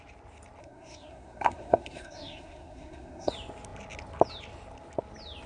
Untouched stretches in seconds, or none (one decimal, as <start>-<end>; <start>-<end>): 0.0-0.6; 3.3-5.5